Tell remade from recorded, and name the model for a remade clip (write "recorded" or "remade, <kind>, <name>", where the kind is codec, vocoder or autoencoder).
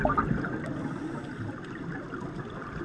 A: recorded